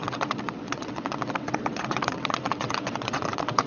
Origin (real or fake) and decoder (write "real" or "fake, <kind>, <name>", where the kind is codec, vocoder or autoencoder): fake, vocoder, WaveNeXt